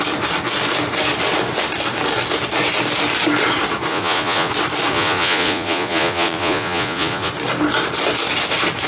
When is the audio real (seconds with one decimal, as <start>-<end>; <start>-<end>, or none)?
0.0-3.9; 4.5-4.9; 7.3-8.9